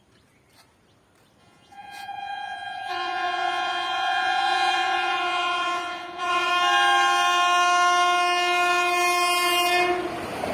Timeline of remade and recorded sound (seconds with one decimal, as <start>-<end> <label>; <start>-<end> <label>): 0.0-1.4 recorded; 1.4-6.5 remade; 6.5-10.5 recorded